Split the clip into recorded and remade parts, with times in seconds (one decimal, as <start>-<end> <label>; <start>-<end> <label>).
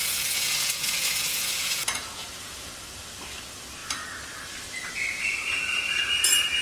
0.0-2.7 remade; 2.7-6.6 recorded